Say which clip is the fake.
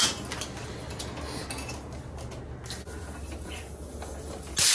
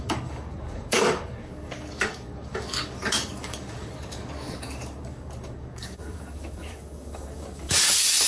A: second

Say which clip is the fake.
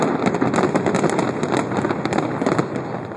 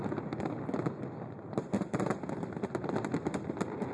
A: second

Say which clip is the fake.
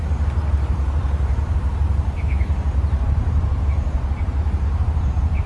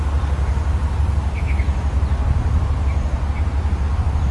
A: first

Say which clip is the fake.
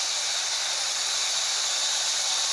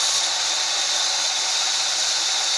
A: first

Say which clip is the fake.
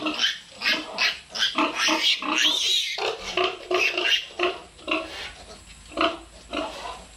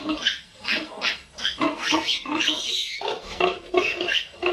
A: second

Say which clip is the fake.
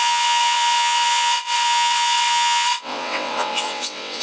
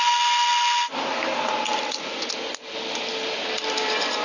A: first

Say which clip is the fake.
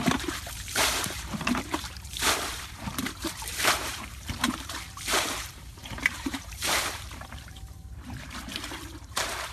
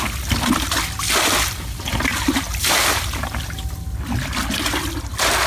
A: first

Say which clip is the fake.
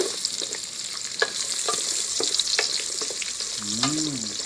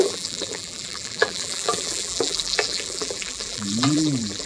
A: second